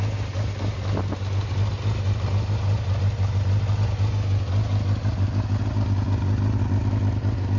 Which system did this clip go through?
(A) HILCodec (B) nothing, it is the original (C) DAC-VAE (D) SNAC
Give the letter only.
B